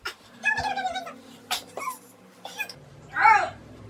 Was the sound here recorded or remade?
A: remade